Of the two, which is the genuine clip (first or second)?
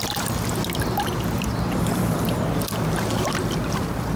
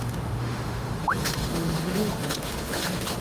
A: first